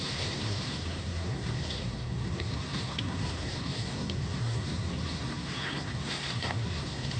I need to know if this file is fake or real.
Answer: fake